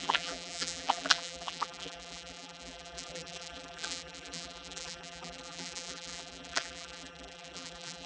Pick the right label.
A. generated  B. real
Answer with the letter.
A